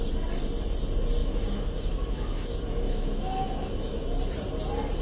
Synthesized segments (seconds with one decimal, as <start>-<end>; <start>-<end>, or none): 1.2-4.2